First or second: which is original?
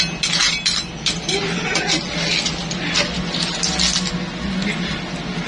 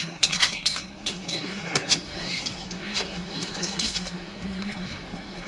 first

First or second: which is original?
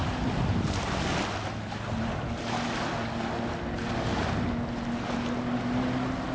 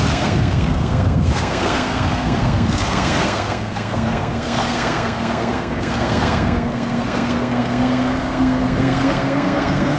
first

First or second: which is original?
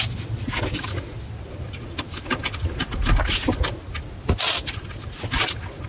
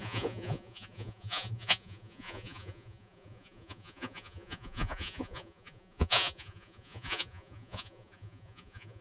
first